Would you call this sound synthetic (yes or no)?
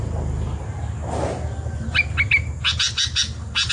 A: no